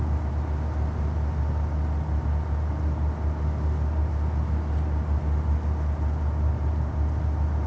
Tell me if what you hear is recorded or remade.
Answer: recorded